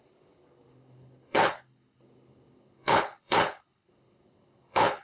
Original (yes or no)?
no